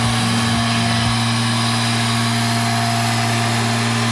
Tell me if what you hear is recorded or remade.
recorded